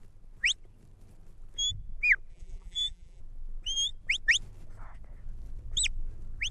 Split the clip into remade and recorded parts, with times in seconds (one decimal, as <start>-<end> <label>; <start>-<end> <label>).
0.0-2.3 recorded; 2.3-3.2 remade; 3.2-6.5 recorded